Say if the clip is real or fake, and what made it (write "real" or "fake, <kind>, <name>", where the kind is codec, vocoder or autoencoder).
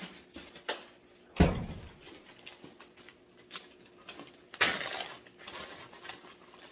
real